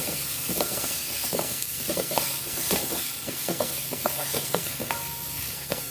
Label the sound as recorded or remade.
remade